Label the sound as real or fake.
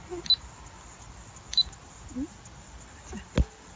real